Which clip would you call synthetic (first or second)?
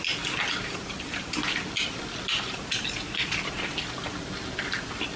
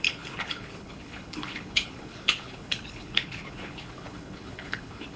second